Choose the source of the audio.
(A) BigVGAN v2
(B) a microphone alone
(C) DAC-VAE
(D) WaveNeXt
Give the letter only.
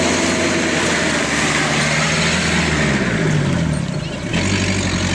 B